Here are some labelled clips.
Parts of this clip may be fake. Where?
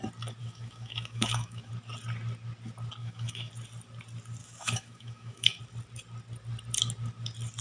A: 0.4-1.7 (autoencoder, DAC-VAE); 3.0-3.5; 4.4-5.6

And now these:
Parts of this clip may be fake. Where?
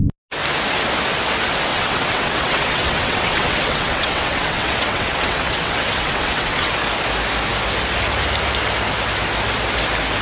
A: 1.7-6.7 (vocoder, WaveNeXt)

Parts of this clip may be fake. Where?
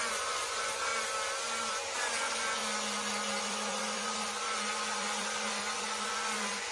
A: 0.0-0.9 (vocoder, Vocos); 1.7-2.6; 3.4-6.7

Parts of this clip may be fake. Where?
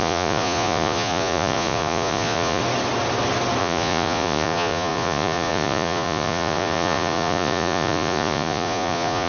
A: 0.0-2.6 (vocoder, Vocos); 3.6-9.3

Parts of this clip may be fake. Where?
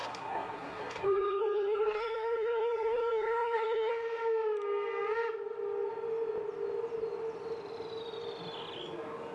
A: 0.0-3.9 (codec, SNAC)